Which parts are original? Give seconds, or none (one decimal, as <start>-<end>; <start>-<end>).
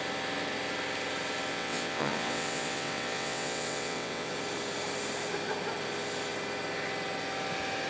0.0-1.5; 4.3-7.9